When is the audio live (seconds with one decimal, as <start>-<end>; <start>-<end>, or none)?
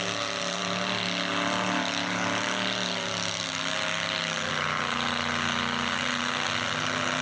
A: 0.0-7.2